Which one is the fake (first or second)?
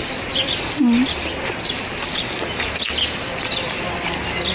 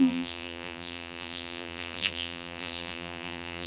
second